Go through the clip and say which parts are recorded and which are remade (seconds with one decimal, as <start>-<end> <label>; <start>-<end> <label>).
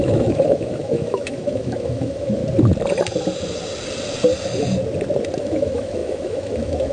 0.0-2.4 remade; 2.4-5.4 recorded; 5.4-6.9 remade